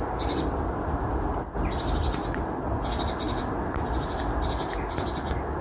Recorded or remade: recorded